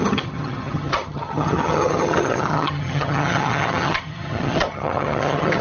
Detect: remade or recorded remade